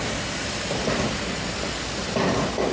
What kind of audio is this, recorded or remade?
recorded